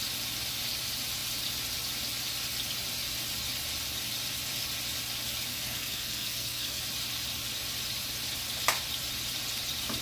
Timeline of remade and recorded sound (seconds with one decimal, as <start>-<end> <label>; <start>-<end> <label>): 0.0-5.5 recorded; 5.5-6.8 remade; 6.8-10.0 recorded